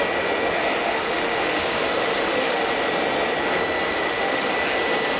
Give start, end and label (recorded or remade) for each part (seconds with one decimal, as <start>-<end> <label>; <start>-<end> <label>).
0.0-0.8 recorded; 0.8-2.7 remade; 2.7-4.0 recorded; 4.0-4.5 remade; 4.5-5.2 recorded